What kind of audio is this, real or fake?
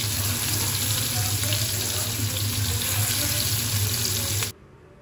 real